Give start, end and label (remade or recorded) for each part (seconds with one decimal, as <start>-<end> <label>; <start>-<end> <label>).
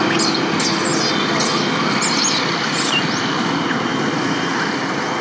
0.0-5.2 recorded